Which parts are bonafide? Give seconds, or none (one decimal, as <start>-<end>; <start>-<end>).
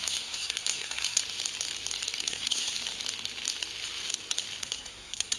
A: 1.2-2.2; 2.7-4.6